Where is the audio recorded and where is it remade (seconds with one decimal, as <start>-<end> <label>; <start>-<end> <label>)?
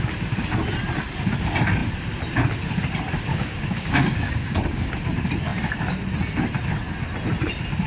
0.0-3.3 recorded; 3.3-4.9 remade; 4.9-7.9 recorded